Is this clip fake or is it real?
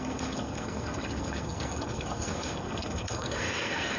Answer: fake